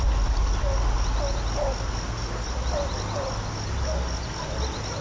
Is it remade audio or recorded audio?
recorded